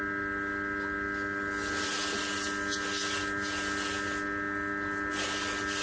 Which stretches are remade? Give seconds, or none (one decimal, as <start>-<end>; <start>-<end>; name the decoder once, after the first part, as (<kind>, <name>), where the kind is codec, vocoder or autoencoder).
none